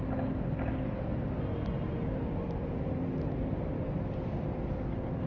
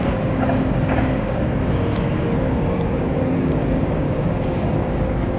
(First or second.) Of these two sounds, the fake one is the second